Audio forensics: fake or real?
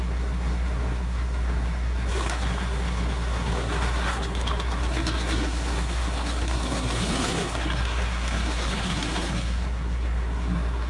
fake